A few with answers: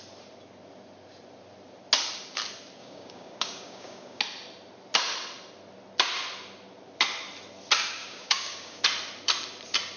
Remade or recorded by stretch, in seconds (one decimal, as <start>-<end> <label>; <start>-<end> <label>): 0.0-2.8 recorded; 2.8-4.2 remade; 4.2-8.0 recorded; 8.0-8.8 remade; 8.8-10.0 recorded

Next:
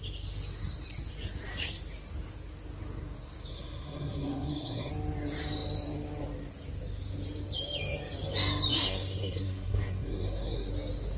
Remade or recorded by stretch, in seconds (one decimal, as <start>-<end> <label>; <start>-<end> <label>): 0.0-3.5 recorded; 3.5-4.9 remade; 4.9-8.7 recorded; 8.7-10.7 remade; 10.7-11.2 recorded

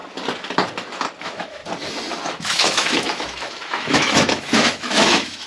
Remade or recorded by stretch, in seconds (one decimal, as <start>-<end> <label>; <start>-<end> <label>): 0.0-1.2 recorded; 1.2-1.6 remade; 1.6-2.2 recorded; 2.2-5.5 remade

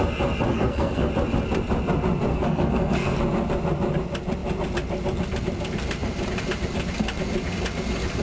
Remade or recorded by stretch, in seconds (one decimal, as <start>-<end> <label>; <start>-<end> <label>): 0.0-0.5 recorded; 0.5-1.1 remade; 1.1-2.3 recorded; 2.3-3.2 remade; 3.2-8.2 recorded

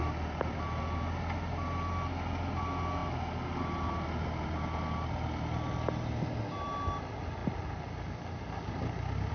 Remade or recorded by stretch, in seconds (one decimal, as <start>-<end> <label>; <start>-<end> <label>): 0.0-9.3 recorded